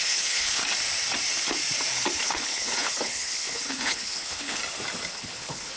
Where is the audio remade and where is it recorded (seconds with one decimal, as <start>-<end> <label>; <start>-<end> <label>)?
0.0-0.6 remade; 0.6-2.2 recorded; 2.2-4.6 remade; 4.6-5.1 recorded; 5.1-5.8 remade